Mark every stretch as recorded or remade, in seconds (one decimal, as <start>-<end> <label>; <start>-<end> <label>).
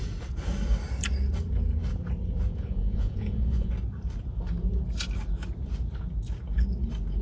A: 0.0-2.5 recorded; 2.5-3.7 remade; 3.7-7.2 recorded